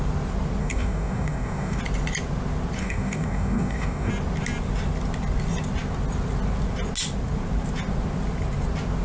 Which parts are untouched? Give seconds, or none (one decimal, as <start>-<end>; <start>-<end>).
0.0-0.6; 1.8-2.8; 4.1-9.0